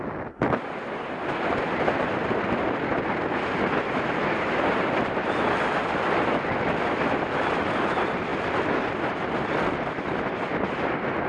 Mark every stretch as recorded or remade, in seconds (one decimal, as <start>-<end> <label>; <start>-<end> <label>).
0.0-11.3 recorded